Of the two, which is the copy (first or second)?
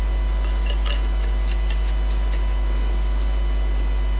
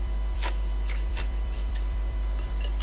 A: second